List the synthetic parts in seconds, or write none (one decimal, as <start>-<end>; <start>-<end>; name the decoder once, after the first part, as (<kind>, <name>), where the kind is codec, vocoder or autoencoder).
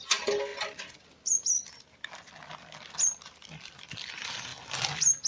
none